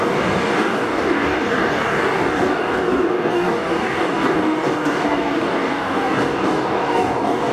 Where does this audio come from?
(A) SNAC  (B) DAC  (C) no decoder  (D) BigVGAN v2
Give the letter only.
B